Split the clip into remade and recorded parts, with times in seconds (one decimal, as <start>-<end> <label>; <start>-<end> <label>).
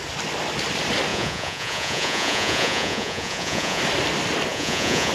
0.0-1.1 recorded; 1.1-3.8 remade; 3.8-4.5 recorded; 4.5-5.1 remade